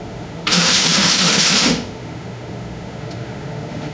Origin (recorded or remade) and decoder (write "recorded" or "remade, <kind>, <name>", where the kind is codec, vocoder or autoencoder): remade, autoencoder, DAC-VAE